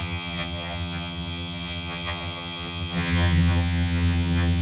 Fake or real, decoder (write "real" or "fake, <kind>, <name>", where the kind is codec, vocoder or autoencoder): fake, vocoder, HiFi-GAN